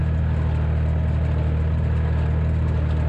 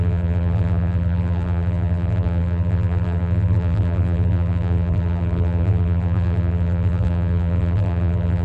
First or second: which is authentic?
first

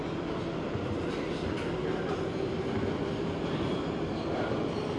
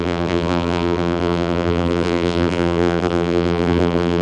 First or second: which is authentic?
first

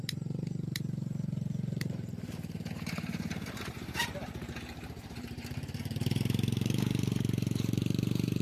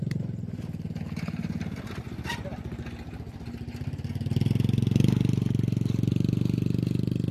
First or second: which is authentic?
second